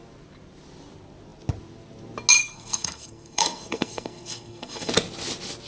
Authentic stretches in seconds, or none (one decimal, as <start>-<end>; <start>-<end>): 0.0-2.4; 4.9-5.7